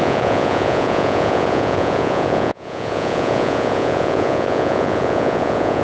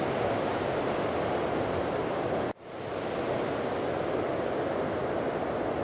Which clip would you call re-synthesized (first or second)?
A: first